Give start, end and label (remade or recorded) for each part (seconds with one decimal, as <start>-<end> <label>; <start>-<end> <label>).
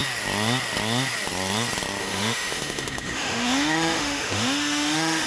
0.0-2.0 recorded; 2.0-5.3 remade